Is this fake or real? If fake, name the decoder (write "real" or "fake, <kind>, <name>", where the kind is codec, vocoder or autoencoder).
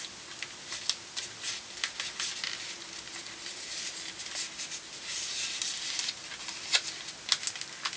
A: real